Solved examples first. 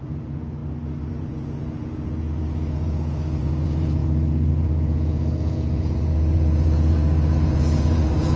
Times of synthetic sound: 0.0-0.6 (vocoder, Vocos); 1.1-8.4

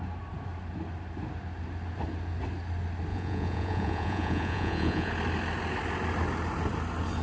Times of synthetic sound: 3.1-5.1 (vocoder, Vocos)

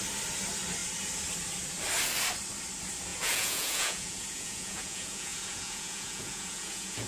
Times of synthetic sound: 3.1-7.1 (vocoder, Vocos)

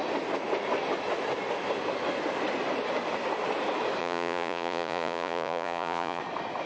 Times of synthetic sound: 4.0-6.2 (vocoder, Vocos)

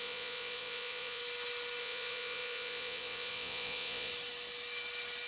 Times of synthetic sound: 0.0-1.2 (vocoder, Vocos); 1.8-4.1

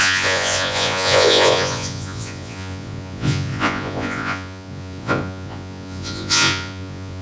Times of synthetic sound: 0.0-7.2 (vocoder, Vocos)

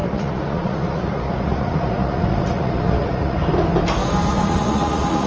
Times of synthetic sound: 0.0-3.4 (vocoder, Vocos); 4.3-5.3

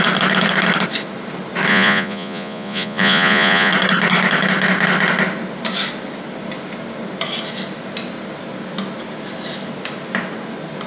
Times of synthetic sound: 1.7-3.7 (vocoder, Vocos)